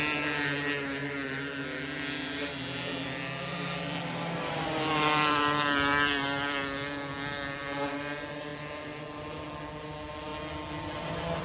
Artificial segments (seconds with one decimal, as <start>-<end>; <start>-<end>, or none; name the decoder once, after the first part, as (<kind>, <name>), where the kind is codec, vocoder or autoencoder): none